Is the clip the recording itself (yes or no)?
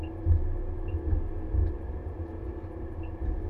no